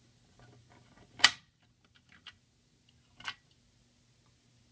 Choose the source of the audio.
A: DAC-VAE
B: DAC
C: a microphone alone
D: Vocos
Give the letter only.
C